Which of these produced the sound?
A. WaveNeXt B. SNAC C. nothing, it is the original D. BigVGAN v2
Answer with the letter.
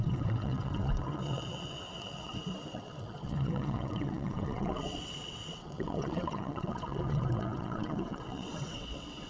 A